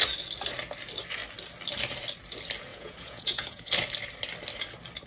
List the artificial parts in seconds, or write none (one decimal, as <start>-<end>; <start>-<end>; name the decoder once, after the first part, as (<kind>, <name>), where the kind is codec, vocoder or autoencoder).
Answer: 2.7-3.7 (vocoder, Vocos)